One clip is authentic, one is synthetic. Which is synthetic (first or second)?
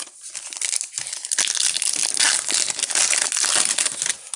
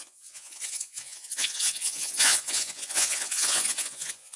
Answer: second